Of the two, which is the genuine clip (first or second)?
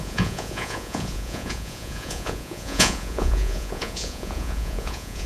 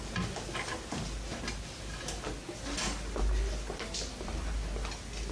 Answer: second